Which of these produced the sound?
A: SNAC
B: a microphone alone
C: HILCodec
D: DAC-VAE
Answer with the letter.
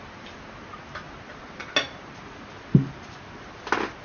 B